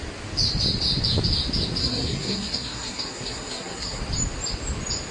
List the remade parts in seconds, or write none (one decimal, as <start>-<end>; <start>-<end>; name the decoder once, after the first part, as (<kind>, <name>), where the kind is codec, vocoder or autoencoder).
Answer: 1.8-4.0 (codec, SNAC)